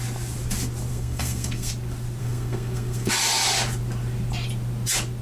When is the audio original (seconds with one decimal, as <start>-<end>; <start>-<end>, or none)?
0.0-0.9; 1.7-2.2; 3.1-5.2